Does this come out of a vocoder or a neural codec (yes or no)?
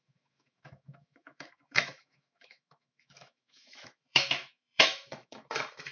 yes